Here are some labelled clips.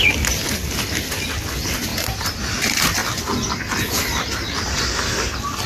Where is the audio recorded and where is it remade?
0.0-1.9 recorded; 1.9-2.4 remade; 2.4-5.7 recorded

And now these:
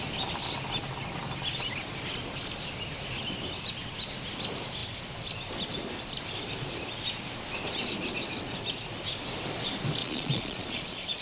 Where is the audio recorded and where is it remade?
0.0-10.0 recorded; 10.0-11.2 remade

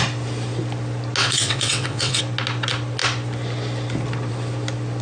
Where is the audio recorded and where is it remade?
0.0-1.2 recorded; 1.2-2.2 remade; 2.2-5.0 recorded

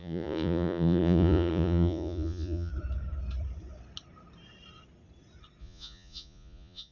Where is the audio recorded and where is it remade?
0.0-2.7 remade; 2.7-5.6 recorded; 5.6-6.9 remade

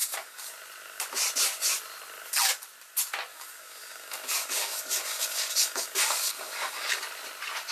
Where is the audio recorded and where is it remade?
0.0-0.5 remade; 0.5-3.3 recorded; 3.3-7.0 remade; 7.0-7.7 recorded

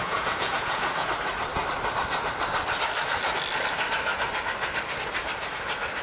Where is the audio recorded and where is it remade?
0.0-1.1 remade; 1.1-6.0 recorded